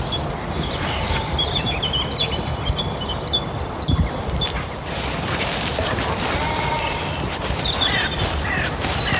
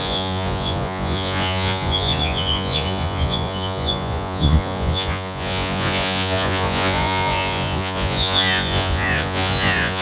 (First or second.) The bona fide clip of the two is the first